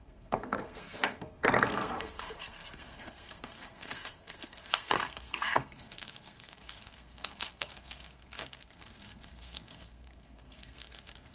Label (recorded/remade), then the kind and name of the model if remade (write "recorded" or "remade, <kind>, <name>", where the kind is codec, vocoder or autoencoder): remade, codec, SNAC